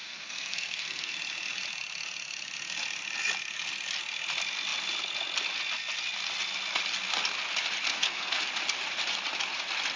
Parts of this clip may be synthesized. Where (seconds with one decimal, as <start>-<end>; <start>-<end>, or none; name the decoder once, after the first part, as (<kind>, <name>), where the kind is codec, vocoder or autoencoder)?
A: 0.0-1.1 (codec, SNAC); 7.9-8.4